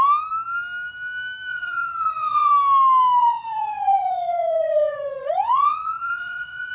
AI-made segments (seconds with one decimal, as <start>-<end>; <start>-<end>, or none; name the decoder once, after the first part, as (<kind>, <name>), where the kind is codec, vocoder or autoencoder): 1.5-2.5 (vocoder, Vocos); 3.2-6.7